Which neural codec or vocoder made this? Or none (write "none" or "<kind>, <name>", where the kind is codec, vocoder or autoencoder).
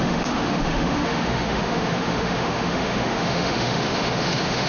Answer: autoencoder, DAC-VAE